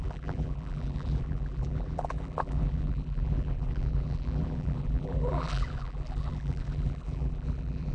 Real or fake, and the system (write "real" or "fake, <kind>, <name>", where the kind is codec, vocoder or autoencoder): fake, vocoder, BigVGAN v2